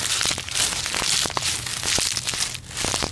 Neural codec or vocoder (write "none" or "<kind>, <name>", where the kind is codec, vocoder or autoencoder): none